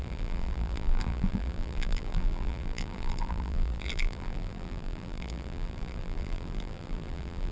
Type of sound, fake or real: fake